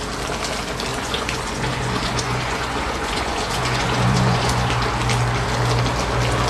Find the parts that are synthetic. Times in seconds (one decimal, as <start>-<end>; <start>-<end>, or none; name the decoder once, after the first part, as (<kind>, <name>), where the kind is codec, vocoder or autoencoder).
0.9-4.7 (vocoder, Vocos)